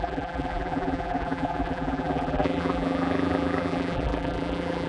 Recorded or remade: remade